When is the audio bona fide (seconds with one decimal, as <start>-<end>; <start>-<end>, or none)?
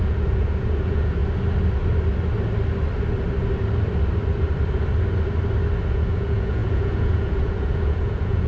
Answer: 1.2-5.9